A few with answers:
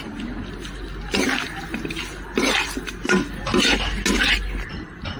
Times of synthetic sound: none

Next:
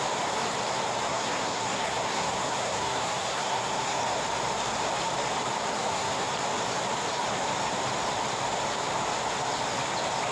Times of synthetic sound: 1.1-4.0; 5.7-6.3

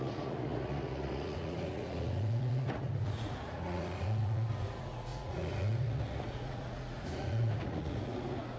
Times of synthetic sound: 0.0-8.6

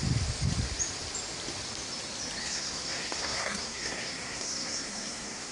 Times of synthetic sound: 2.4-5.5

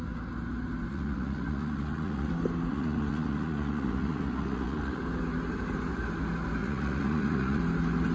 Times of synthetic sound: 0.9-2.3; 2.7-5.0; 6.6-7.6

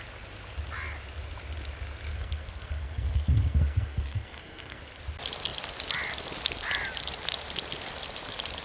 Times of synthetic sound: 2.1-4.8

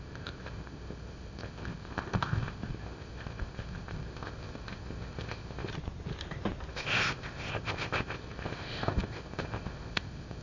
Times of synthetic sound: 0.0-5.7; 6.7-10.4